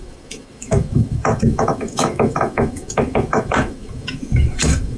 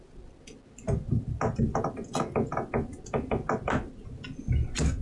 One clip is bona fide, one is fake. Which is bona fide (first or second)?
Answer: second